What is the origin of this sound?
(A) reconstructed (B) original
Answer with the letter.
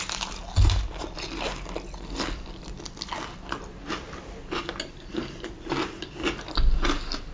B